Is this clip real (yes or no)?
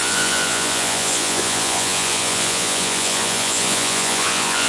no